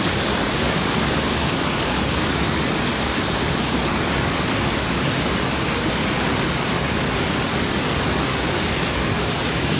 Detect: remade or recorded remade